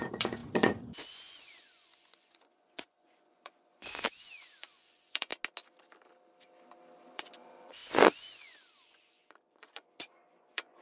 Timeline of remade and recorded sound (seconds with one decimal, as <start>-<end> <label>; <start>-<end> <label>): 0.0-5.3 remade; 5.3-7.1 recorded; 7.1-10.8 remade